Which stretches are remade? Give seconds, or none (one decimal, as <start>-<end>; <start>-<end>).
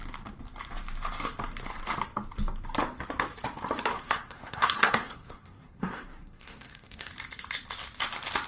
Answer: 3.9-7.1